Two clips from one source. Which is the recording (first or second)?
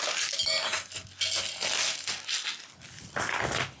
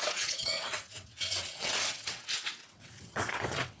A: first